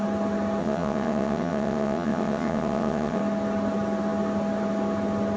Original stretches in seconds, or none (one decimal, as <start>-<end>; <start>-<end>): 0.0-0.6; 3.2-5.4